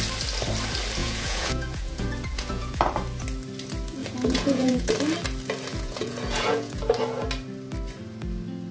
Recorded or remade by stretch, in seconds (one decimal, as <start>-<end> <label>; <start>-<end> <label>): 0.0-1.0 recorded; 1.0-2.8 remade; 2.8-4.0 recorded; 4.0-4.9 remade; 4.9-5.7 recorded; 5.7-6.8 remade; 6.8-8.7 recorded